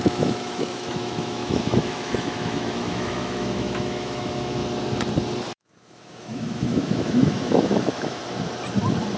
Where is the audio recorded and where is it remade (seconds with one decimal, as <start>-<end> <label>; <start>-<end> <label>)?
0.0-4.6 remade; 4.6-5.5 recorded; 5.5-8.2 remade; 8.2-9.2 recorded